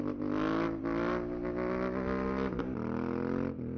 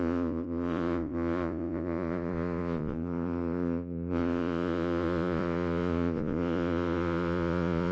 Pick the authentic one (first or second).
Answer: first